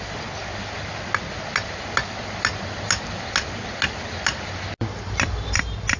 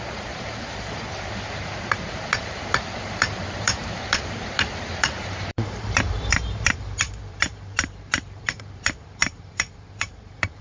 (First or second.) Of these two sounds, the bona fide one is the first